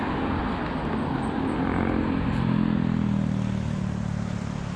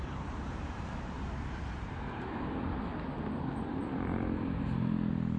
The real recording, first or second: first